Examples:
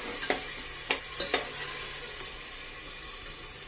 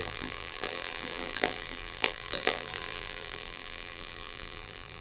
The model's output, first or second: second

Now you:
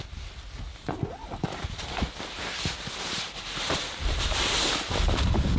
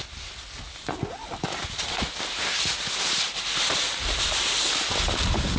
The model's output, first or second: first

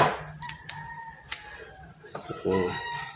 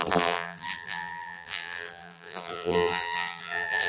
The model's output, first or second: second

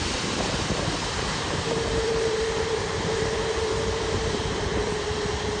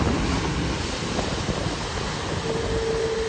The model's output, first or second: first